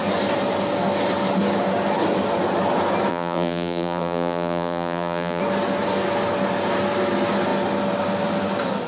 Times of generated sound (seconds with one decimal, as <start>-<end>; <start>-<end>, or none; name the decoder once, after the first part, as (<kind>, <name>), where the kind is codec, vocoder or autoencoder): 3.1-5.4 (vocoder, BigVGAN v2)